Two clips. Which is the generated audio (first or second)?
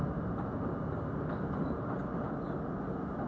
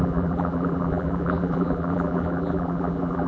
second